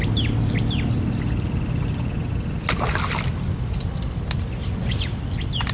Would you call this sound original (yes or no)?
yes